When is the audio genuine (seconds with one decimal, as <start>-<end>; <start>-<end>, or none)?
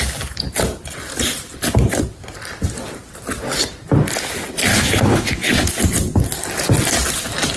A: 0.0-4.7; 5.7-7.6